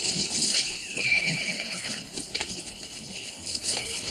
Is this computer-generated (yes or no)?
yes